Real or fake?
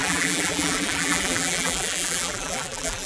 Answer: fake